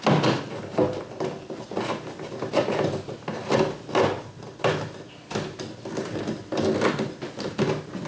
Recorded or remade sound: recorded